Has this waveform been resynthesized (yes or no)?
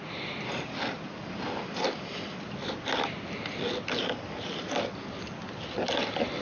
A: no